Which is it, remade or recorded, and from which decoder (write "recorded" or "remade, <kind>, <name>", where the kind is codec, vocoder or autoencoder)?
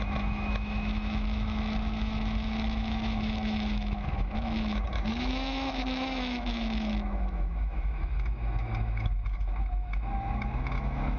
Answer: remade, autoencoder, DAC-VAE